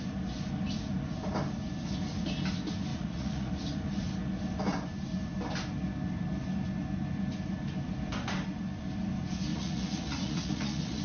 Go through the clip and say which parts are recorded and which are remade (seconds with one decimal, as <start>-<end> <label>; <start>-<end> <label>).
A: 0.0-2.9 recorded; 2.9-3.5 remade; 3.5-9.5 recorded; 9.5-11.0 remade